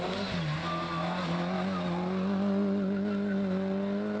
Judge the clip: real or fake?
real